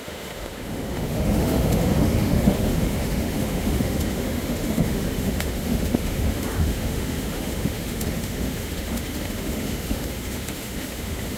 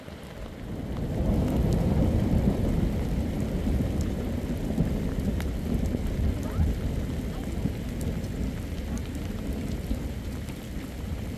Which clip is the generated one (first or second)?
first